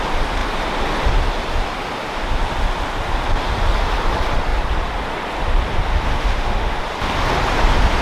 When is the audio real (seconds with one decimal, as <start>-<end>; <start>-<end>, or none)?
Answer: 0.0-5.9; 6.8-8.0